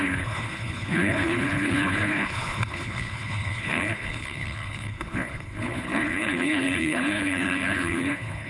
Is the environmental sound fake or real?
fake